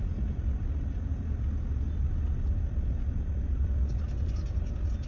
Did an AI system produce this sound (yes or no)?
no